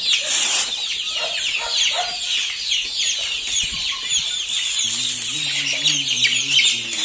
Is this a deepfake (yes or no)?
no